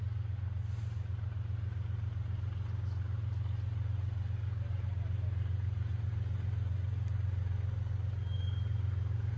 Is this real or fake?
real